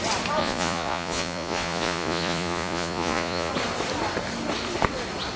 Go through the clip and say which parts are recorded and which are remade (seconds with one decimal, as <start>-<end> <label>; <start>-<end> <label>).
0.0-0.4 recorded; 0.4-3.5 remade; 3.5-5.4 recorded